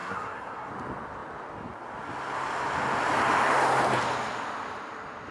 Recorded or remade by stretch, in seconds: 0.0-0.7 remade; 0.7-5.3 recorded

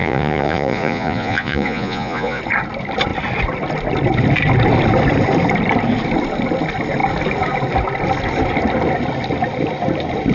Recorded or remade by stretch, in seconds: 0.0-2.4 remade; 2.4-10.3 recorded

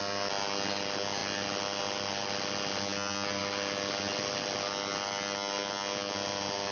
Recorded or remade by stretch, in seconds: 0.0-6.7 recorded

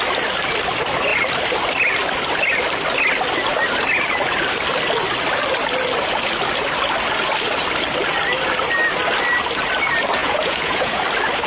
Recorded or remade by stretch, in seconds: 0.0-10.2 recorded; 10.2-11.0 remade; 11.0-11.5 recorded

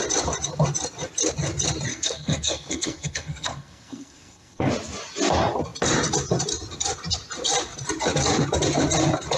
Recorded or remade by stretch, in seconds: 0.0-1.9 recorded; 1.9-4.7 remade; 4.7-9.4 recorded

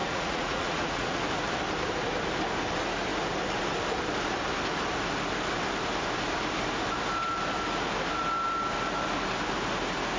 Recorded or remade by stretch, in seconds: 0.0-1.2 remade; 1.2-10.2 recorded

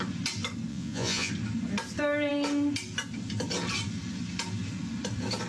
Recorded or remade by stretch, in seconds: 0.0-0.7 recorded; 0.7-1.3 remade; 1.3-5.5 recorded

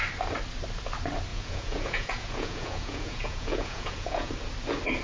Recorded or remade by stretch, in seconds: 0.0-1.3 recorded; 1.3-4.3 remade; 4.3-5.0 recorded